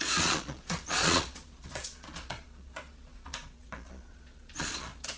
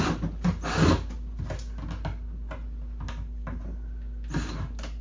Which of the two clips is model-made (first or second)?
first